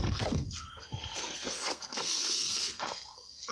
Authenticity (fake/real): fake